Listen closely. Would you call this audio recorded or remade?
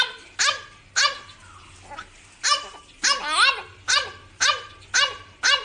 recorded